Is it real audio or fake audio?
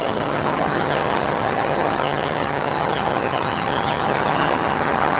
fake